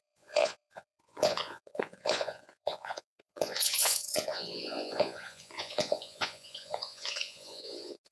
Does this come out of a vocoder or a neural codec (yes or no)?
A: yes